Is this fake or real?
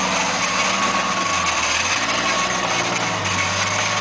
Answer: real